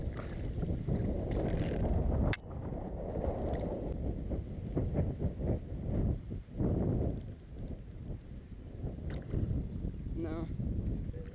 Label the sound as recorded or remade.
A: recorded